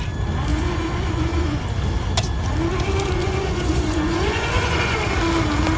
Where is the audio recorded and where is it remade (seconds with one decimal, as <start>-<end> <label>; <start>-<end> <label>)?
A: 0.0-0.5 recorded; 0.5-1.6 remade; 1.6-3.2 recorded; 3.2-5.1 remade; 5.1-5.8 recorded